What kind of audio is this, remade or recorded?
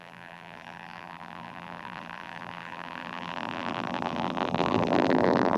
remade